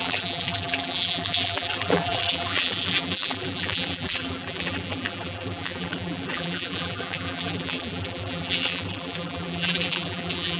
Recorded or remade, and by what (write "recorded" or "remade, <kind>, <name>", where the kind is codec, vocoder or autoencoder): remade, vocoder, BigVGAN v2